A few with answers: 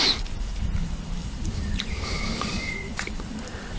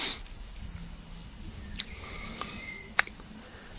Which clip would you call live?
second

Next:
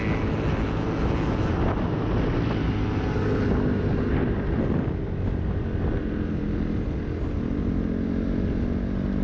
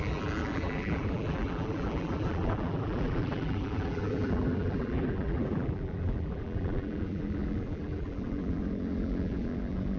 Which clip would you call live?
first